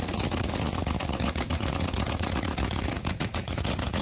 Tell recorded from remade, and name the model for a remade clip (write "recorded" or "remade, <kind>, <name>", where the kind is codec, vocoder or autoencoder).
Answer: remade, vocoder, Vocos